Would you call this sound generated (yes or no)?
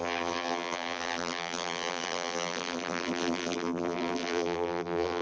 yes